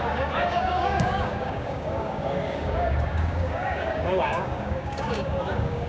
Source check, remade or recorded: remade